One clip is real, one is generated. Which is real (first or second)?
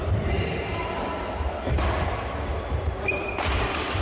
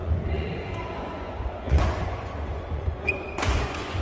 first